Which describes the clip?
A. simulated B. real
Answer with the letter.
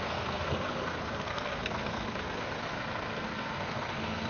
A